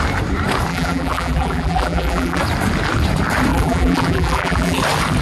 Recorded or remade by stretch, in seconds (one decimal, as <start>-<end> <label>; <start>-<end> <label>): 0.0-0.7 recorded; 0.7-2.4 remade; 2.4-3.5 recorded; 3.5-4.8 remade; 4.8-5.2 recorded

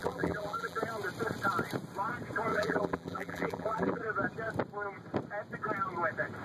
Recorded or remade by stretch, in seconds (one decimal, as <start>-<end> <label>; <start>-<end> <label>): 0.0-0.8 remade; 0.8-2.5 recorded; 2.5-4.0 remade; 4.0-6.4 recorded

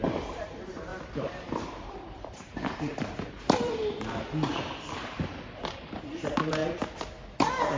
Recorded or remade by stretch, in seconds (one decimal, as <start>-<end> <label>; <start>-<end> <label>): 0.0-3.8 remade; 3.8-5.7 recorded; 5.7-6.6 remade; 6.6-7.8 recorded

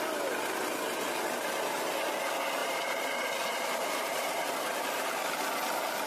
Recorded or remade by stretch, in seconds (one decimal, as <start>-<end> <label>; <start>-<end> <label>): 0.0-2.6 recorded; 2.6-5.1 remade; 5.1-6.1 recorded

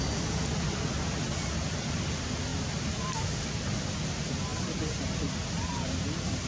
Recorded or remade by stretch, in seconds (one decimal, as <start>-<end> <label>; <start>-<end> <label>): 0.0-6.5 recorded

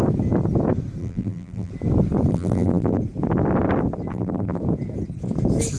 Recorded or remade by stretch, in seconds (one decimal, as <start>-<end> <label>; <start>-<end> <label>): 0.0-1.0 recorded; 1.0-1.7 remade; 1.7-2.3 recorded; 2.3-3.0 remade; 3.0-4.1 recorded; 4.1-4.6 remade; 4.6-5.8 recorded